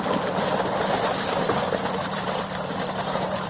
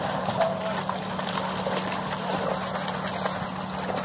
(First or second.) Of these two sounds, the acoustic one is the second